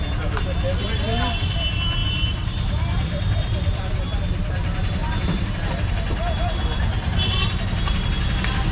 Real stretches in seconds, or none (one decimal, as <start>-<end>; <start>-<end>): 0.0-2.0; 4.0-5.0; 5.7-8.7